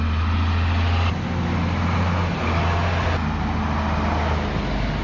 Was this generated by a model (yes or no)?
no